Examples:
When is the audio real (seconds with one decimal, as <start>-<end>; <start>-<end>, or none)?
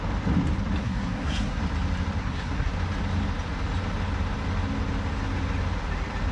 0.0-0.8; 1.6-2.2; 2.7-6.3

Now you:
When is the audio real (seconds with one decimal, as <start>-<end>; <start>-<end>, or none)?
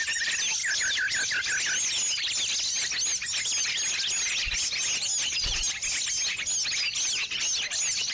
0.0-8.1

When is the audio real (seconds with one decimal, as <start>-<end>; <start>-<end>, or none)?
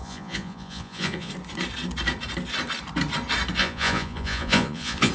1.3-3.6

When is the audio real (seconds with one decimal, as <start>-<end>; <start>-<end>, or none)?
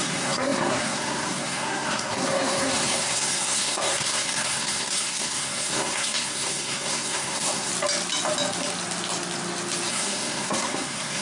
7.7-9.9